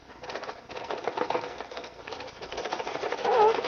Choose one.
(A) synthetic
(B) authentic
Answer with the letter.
A